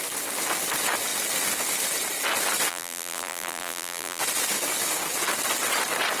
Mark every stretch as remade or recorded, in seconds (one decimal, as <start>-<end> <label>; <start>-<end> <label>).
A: 0.0-2.7 recorded; 2.7-4.2 remade; 4.2-6.2 recorded